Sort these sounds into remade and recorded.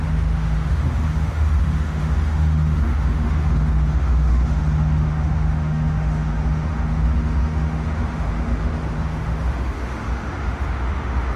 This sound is remade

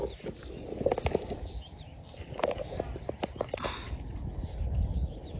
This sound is recorded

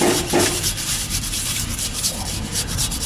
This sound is remade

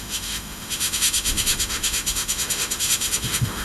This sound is remade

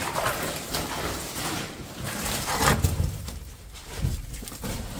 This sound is remade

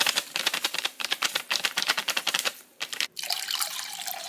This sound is remade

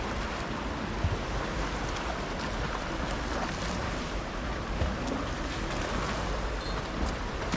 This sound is recorded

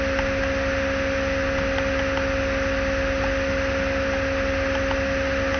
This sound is recorded